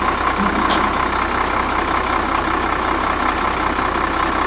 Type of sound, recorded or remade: recorded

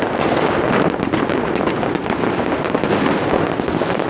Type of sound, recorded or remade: recorded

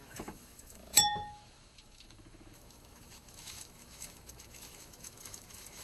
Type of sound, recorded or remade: remade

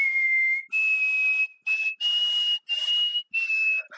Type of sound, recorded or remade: recorded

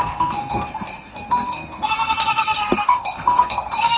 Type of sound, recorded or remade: remade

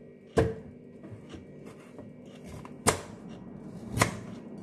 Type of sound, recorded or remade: recorded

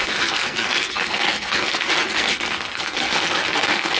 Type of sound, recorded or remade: remade